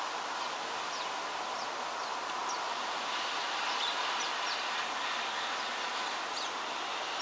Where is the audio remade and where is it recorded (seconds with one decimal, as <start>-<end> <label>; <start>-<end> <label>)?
0.0-7.2 recorded